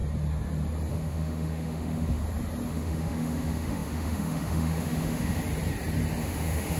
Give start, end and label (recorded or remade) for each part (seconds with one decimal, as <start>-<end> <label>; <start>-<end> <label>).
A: 0.0-0.9 recorded; 0.9-2.2 remade; 2.2-2.7 recorded; 2.7-5.4 remade; 5.4-6.2 recorded; 6.2-6.8 remade